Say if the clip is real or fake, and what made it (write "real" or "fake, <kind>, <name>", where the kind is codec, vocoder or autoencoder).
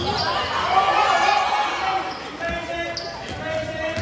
real